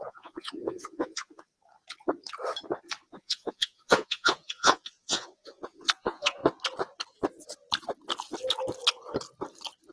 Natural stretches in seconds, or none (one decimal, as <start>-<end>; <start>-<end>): 1.5-3.1; 6.4-9.9